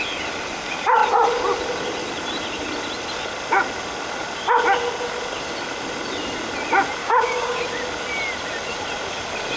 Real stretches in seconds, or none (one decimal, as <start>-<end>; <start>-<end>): 0.0-7.0; 7.6-9.6